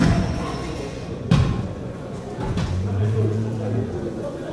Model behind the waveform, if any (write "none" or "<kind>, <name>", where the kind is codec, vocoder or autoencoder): vocoder, Vocos